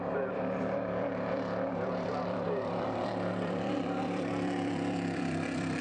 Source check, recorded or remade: remade